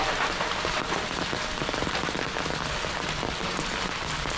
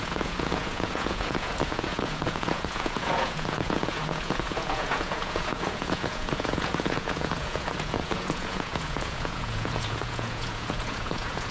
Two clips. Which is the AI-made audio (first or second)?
second